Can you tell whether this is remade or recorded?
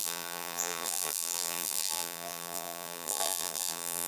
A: remade